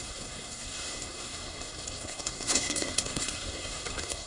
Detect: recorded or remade remade